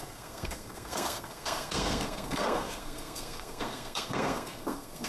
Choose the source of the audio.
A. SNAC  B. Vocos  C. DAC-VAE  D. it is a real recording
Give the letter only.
A